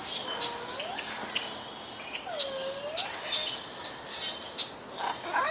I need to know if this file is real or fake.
real